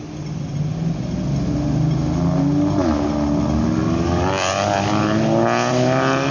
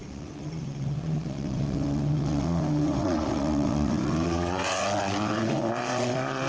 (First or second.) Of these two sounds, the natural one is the first